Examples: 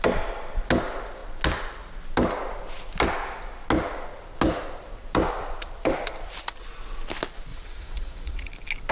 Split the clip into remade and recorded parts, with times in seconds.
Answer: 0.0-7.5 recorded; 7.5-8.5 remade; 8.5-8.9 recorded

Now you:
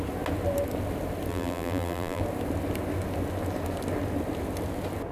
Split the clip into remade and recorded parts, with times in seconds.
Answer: 0.0-1.3 recorded; 1.3-2.2 remade; 2.2-5.1 recorded

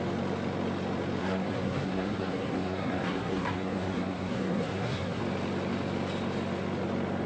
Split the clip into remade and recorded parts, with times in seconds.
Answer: 0.0-1.2 recorded; 1.2-5.2 remade; 5.2-7.3 recorded

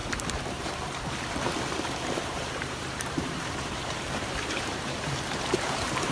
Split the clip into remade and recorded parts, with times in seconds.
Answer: 0.0-0.7 remade; 0.7-2.2 recorded; 2.2-6.1 remade

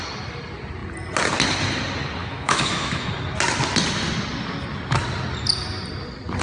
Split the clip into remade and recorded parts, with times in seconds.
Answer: 0.0-2.2 recorded; 2.2-3.1 remade; 3.1-6.4 recorded